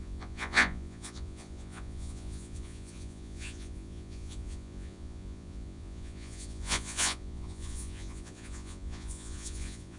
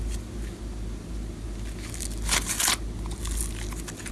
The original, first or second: second